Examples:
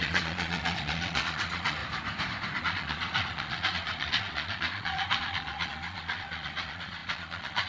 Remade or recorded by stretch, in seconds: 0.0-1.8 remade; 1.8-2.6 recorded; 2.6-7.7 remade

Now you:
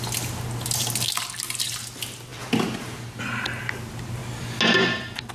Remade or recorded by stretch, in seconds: 0.0-5.3 recorded